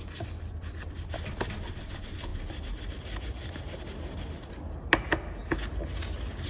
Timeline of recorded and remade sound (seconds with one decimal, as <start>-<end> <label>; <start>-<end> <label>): 0.0-6.5 recorded